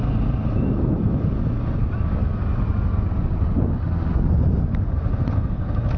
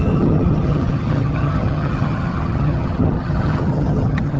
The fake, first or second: second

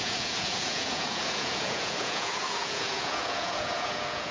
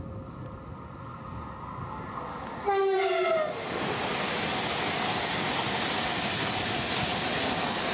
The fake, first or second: first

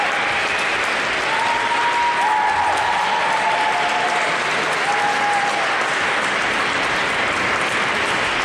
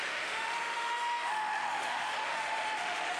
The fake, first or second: second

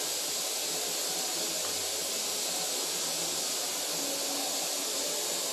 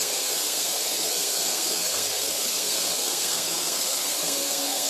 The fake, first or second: second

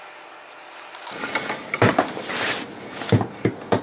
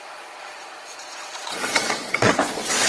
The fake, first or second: second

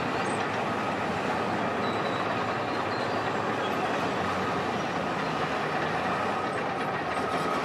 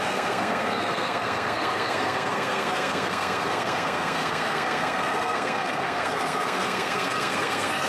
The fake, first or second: second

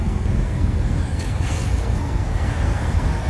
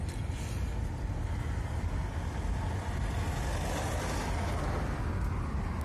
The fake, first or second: first